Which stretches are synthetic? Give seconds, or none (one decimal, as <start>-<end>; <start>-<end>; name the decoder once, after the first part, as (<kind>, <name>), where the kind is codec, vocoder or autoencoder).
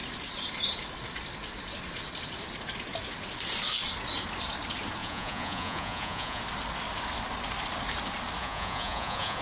5.0-6.4 (vocoder, Vocos); 8.4-9.4